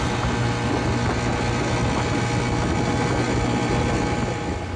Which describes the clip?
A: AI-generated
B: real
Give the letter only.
B